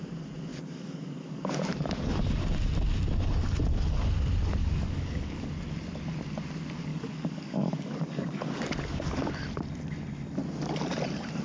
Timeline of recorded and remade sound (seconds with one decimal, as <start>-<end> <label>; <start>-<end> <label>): 0.0-0.5 recorded; 0.5-1.4 remade; 1.4-4.6 recorded; 4.6-5.5 remade; 5.5-6.9 recorded; 6.9-9.4 remade; 9.4-11.4 recorded